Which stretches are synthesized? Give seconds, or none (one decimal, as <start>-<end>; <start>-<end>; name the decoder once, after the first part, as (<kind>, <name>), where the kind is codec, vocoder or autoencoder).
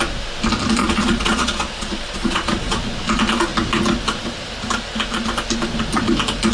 0.8-2.8 (vocoder, Vocos)